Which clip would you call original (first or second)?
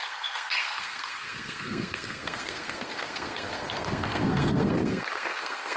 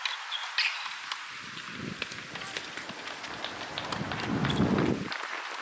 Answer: second